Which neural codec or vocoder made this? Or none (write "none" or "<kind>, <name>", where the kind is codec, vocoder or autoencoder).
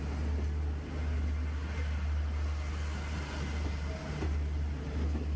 none